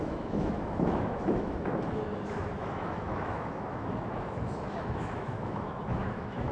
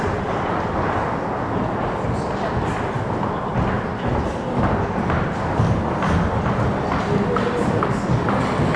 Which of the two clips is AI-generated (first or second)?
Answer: first